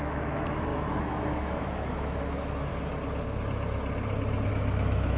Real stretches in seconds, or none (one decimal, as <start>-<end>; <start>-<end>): 2.7-4.5

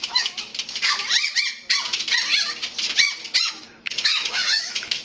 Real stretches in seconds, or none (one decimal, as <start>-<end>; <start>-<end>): 0.5-3.5

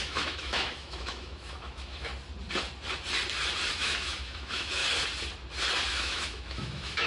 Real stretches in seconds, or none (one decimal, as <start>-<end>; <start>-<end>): 2.1-3.7; 4.8-5.9

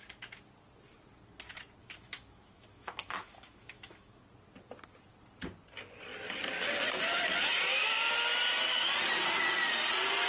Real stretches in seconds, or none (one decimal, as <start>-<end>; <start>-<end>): 0.0-1.8; 4.2-10.3